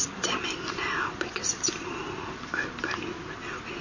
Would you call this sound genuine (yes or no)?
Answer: yes